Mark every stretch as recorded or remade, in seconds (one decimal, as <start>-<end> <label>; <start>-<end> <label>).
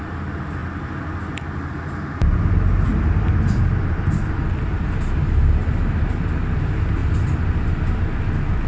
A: 0.0-8.7 recorded